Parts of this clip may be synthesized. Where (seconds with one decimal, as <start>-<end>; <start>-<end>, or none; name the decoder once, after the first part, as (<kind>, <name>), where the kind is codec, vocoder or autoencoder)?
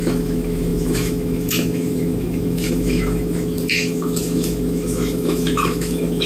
0.0-6.3 (autoencoder, DAC-VAE)